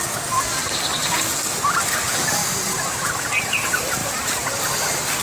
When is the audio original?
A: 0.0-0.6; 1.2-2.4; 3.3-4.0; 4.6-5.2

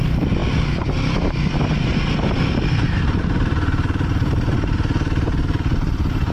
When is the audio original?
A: 0.0-6.3

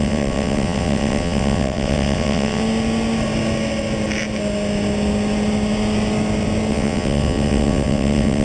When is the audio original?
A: 2.6-6.7

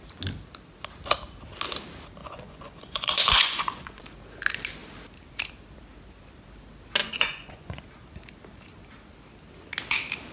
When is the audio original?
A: 0.0-2.2; 4.0-7.0; 7.8-10.3

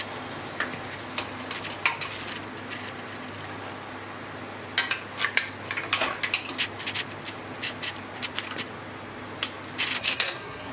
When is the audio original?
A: 0.0-10.0